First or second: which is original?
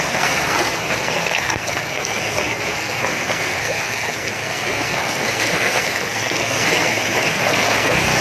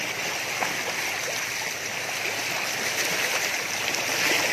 second